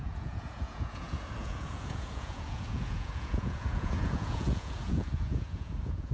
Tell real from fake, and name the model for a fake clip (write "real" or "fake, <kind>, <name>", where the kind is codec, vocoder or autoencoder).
fake, vocoder, Vocos